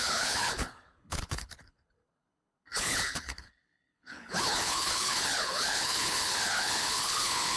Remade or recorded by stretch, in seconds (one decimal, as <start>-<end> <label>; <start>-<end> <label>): 0.0-7.6 remade